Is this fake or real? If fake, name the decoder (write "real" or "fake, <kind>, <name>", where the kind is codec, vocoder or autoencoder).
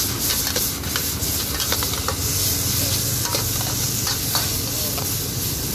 real